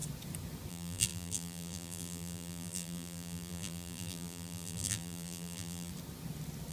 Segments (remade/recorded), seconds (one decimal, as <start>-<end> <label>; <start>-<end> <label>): 0.0-0.7 recorded; 0.7-5.9 remade; 5.9-6.7 recorded